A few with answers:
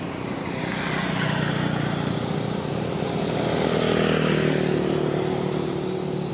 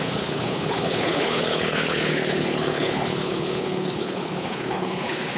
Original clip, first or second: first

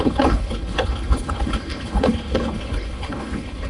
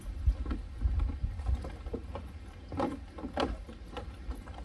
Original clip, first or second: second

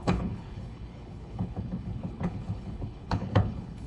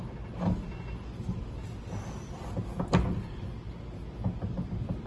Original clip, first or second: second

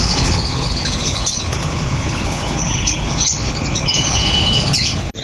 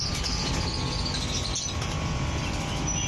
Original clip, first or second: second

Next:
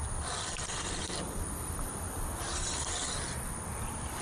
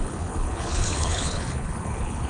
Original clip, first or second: first